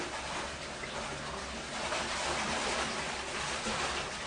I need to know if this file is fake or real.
real